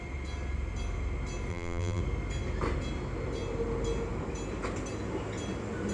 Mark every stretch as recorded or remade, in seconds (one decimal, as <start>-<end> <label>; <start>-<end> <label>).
0.0-1.5 recorded; 1.5-2.0 remade; 2.0-5.9 recorded